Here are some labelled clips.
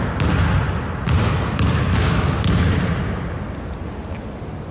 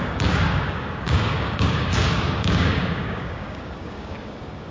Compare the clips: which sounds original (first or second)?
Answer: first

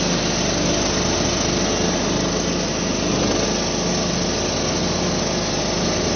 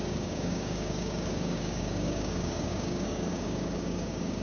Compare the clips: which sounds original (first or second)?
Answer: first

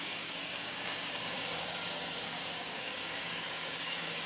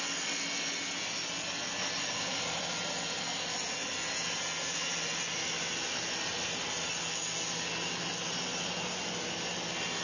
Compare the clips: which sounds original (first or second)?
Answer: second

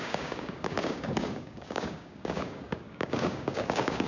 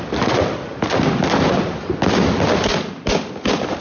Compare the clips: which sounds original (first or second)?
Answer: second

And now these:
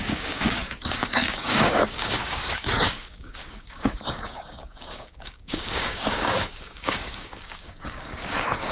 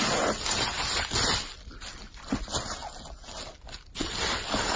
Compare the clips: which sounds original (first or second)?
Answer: second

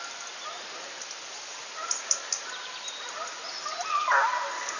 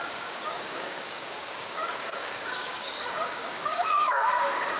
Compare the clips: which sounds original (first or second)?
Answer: first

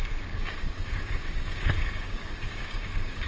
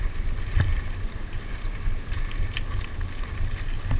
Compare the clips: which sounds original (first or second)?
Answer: second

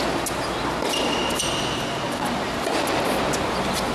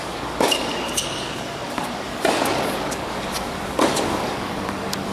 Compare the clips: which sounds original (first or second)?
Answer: first